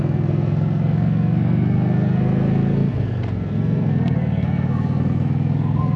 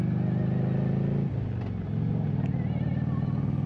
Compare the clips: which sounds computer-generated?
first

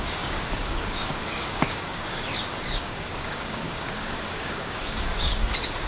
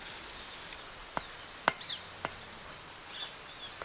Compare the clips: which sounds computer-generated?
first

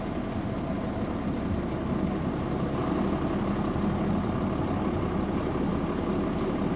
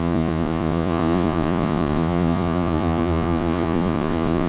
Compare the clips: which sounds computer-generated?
second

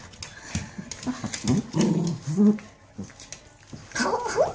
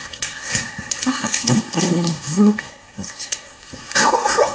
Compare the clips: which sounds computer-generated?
second